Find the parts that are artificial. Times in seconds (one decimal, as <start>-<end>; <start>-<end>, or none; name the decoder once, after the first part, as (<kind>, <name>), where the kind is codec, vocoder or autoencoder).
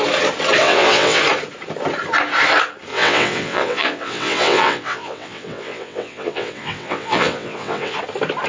0.6-1.2 (vocoder, WaveNeXt); 2.9-8.0